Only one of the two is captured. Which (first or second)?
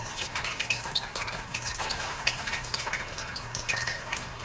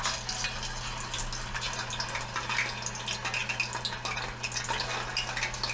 second